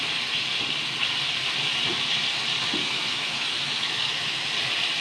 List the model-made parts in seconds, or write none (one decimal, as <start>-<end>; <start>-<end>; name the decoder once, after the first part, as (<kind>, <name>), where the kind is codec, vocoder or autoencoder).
2.8-4.5 (autoencoder, DAC-VAE)